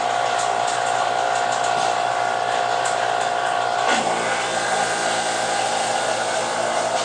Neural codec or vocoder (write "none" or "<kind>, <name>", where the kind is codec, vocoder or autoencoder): none